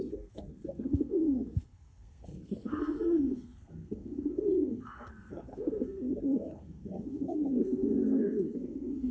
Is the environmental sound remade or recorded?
remade